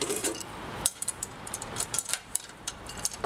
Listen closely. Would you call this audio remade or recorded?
remade